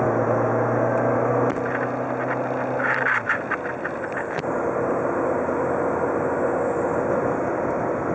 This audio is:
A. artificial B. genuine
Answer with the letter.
B